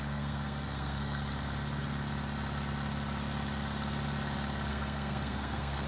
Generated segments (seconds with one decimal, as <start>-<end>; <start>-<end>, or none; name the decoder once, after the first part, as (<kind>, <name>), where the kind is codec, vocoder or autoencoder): 0.0-1.2 (codec, SNAC); 4.7-5.9